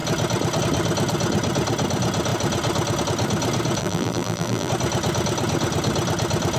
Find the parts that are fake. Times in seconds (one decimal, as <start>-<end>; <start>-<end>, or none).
3.8-4.7